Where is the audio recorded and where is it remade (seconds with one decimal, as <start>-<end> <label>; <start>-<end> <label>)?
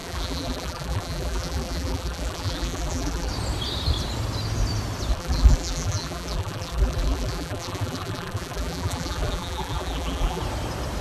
0.0-3.3 remade; 3.3-5.1 recorded; 5.1-10.4 remade; 10.4-11.0 recorded